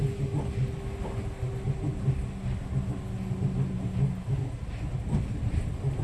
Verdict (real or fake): real